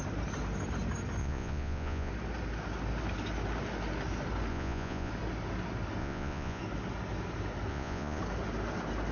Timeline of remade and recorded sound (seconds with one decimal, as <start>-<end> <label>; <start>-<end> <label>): 0.0-1.2 recorded; 1.2-2.1 remade; 2.1-4.5 recorded; 4.5-5.1 remade; 5.1-6.0 recorded; 6.0-6.6 remade; 6.6-7.7 recorded; 7.7-8.2 remade; 8.2-9.1 recorded